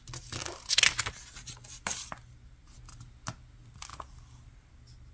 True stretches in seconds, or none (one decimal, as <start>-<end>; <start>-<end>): 0.0-5.1

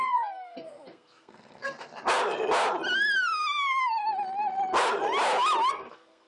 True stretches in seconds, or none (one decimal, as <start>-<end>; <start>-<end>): 1.9-5.7